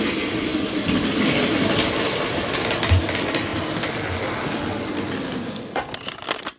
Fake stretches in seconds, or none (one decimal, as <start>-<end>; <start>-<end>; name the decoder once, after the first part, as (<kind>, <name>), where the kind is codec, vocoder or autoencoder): none